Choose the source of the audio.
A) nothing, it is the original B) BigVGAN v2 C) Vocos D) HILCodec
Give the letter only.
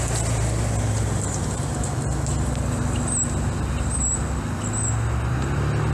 A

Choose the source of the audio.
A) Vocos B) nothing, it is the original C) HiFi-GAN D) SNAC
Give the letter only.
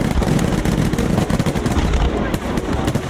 B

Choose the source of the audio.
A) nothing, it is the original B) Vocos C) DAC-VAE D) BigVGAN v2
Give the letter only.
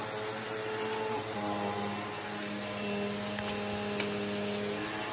A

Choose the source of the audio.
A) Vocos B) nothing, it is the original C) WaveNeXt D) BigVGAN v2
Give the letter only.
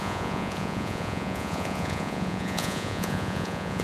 A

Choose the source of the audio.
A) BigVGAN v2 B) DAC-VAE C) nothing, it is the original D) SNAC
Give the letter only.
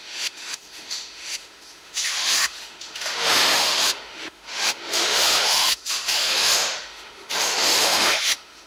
B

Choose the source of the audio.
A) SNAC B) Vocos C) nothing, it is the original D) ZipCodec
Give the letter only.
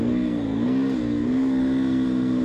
A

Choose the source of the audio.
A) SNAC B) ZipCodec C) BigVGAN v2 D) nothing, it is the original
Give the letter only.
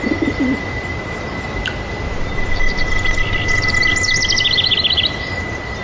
D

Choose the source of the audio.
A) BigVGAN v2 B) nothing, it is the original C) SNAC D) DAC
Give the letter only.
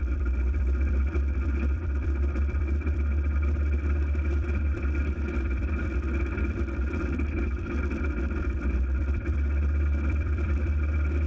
A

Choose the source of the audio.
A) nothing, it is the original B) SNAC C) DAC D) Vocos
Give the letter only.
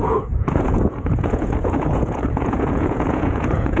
D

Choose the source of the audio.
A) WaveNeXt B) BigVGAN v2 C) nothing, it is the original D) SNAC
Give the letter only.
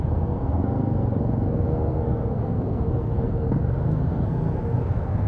D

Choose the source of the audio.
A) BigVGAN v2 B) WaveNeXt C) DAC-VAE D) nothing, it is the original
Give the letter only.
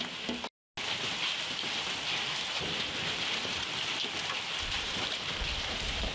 D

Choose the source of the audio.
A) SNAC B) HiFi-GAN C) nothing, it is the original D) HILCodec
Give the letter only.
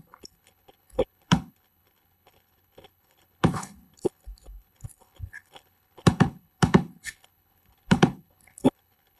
D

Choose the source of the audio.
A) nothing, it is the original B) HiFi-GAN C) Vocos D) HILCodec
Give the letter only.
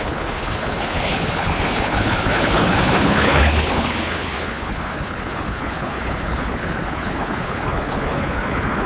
D